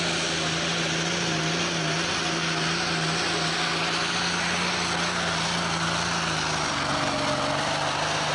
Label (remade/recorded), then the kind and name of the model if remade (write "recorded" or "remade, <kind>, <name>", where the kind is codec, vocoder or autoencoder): recorded